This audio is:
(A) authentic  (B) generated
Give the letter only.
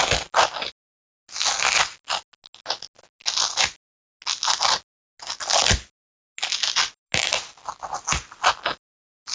A